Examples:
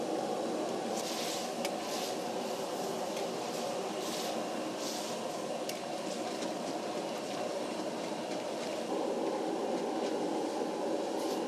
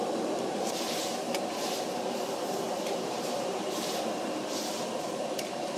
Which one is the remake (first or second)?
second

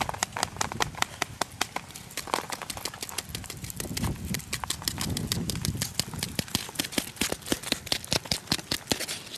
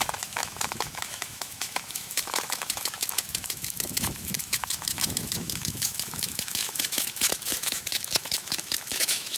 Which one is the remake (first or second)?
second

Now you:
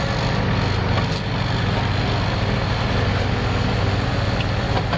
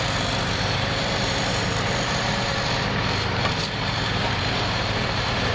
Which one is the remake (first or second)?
second